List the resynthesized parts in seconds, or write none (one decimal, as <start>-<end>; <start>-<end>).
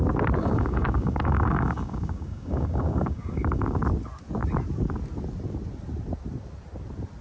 0.4-3.8